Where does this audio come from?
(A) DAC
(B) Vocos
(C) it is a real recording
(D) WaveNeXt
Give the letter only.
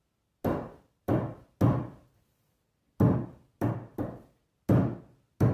C